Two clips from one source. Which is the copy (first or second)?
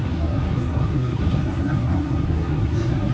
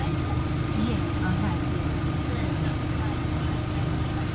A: first